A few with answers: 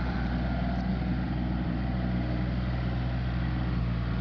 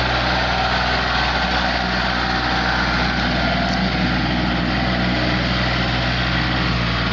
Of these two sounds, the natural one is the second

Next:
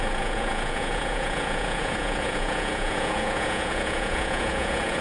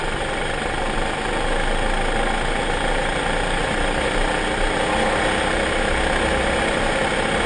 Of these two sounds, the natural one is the second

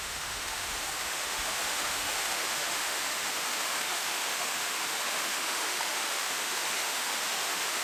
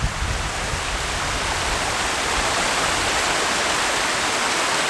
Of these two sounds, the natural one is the second